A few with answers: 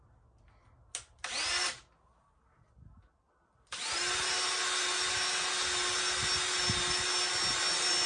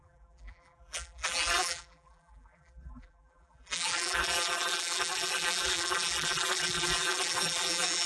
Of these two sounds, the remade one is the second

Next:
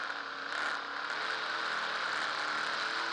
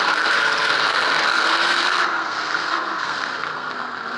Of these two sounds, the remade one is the second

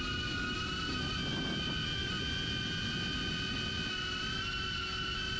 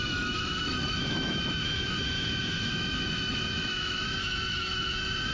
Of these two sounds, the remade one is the second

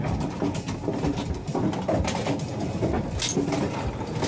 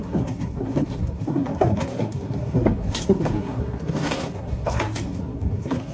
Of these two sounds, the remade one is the second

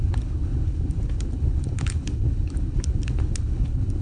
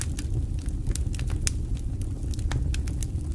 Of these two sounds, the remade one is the first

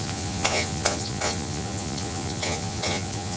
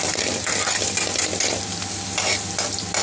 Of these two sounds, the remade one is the first